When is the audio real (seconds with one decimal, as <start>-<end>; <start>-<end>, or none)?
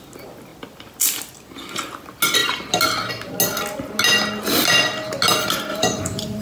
0.0-5.7